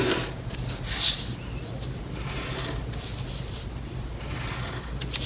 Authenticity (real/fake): real